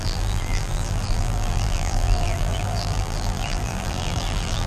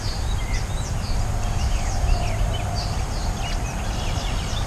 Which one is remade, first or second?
first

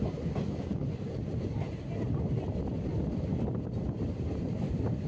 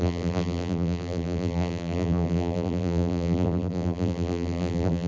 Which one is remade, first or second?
second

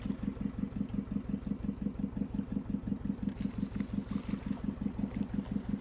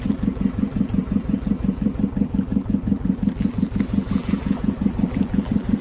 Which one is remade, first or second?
second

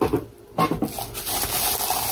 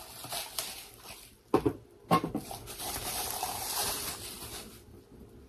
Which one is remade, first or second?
second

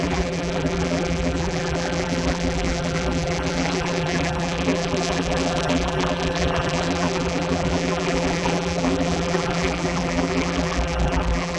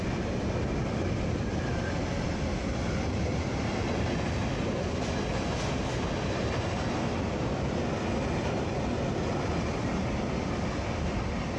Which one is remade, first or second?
first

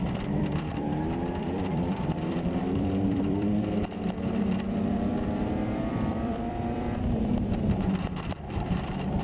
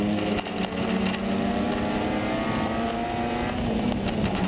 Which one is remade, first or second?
first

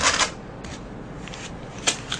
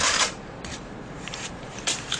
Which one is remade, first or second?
second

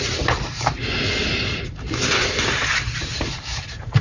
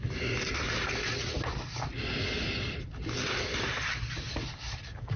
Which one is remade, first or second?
first